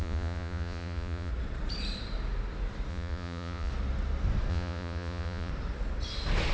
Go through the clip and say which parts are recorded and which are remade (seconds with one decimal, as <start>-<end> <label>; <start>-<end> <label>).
0.0-1.3 remade; 1.3-2.9 recorded; 2.9-3.7 remade; 3.7-4.5 recorded; 4.5-5.5 remade; 5.5-6.5 recorded